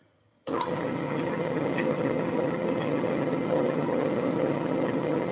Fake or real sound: fake